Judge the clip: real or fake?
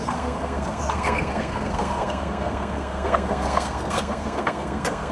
fake